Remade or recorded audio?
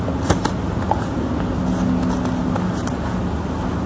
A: recorded